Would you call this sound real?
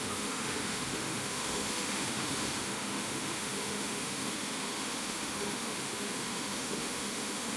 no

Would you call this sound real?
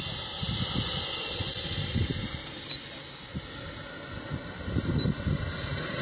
yes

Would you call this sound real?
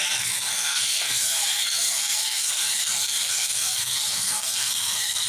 no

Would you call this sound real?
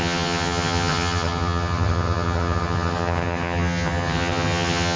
no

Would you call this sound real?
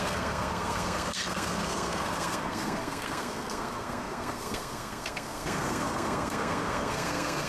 no